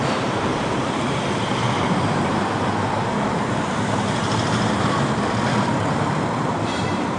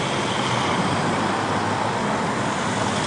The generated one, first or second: first